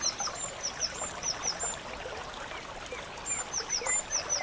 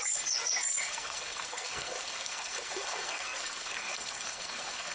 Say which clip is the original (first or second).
first